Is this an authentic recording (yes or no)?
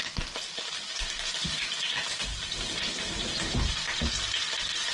yes